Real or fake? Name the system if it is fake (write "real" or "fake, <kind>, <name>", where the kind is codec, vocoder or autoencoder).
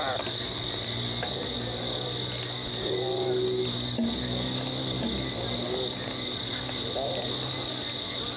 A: real